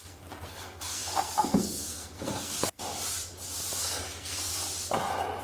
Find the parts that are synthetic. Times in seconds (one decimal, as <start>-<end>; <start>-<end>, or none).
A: 0.0-2.8; 3.8-4.5